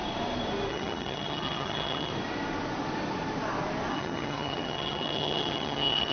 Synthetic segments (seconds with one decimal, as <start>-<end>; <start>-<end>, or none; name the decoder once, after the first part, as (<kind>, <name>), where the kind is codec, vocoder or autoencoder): 0.7-2.1 (vocoder, HiFi-GAN); 3.9-6.1

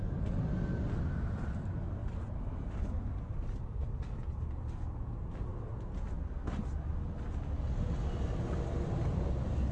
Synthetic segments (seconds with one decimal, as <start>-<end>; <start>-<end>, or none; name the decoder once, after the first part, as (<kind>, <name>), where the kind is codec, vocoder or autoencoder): 2.0-4.0 (vocoder, BigVGAN v2)

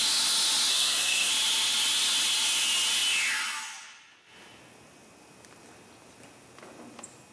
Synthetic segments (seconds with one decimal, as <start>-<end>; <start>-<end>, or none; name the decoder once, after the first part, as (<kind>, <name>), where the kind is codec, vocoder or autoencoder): 0.7-1.3 (codec, SNAC)